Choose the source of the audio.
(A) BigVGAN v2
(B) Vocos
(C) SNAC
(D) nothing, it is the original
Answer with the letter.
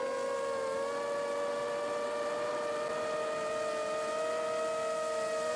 D